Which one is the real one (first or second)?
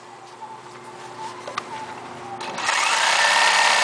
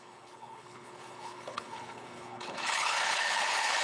first